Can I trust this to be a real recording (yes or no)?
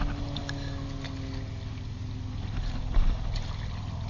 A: yes